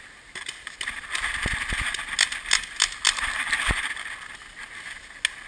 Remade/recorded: recorded